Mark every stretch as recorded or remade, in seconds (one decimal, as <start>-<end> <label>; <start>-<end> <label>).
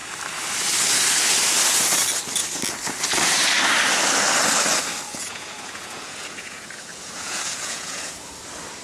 0.0-5.1 recorded; 5.1-8.1 remade; 8.1-8.8 recorded